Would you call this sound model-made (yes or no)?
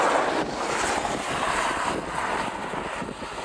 no